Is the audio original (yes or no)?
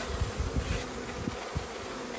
yes